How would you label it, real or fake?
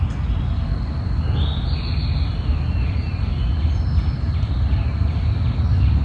real